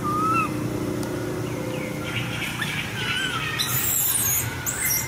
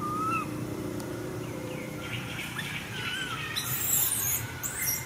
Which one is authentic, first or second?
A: first